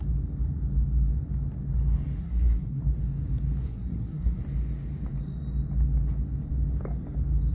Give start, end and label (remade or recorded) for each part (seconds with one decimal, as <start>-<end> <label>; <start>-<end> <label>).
0.0-2.2 recorded; 2.2-2.8 remade; 2.8-3.6 recorded; 3.6-4.4 remade; 4.4-7.5 recorded